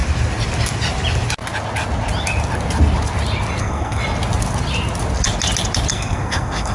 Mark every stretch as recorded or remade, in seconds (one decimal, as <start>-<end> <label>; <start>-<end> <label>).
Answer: 0.0-3.6 recorded; 3.6-4.0 remade; 4.0-5.9 recorded; 5.9-6.7 remade